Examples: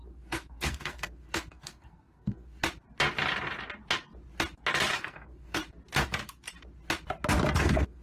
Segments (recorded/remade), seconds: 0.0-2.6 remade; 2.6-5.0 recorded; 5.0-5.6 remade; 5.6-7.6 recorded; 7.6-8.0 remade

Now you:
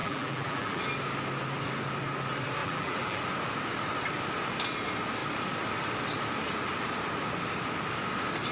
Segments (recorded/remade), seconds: 0.0-0.8 remade; 0.8-2.6 recorded; 2.6-3.2 remade; 3.2-8.5 recorded

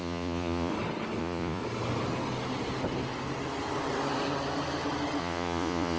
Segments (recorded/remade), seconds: 0.0-0.7 remade; 0.7-1.2 recorded; 1.2-1.6 remade; 1.6-5.2 recorded; 5.2-6.0 remade

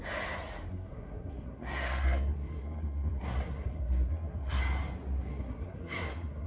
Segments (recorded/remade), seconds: 0.0-0.7 recorded; 0.7-4.6 remade; 4.6-5.3 recorded; 5.3-6.5 remade

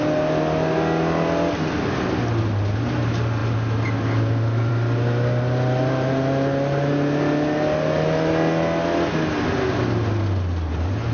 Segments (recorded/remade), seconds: 0.0-11.1 recorded

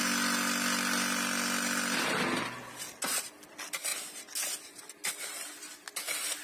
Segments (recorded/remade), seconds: 0.0-6.4 recorded

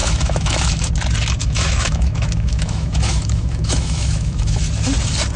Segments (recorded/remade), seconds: 0.0-0.9 remade; 0.9-1.4 recorded; 1.4-4.6 remade; 4.6-5.4 recorded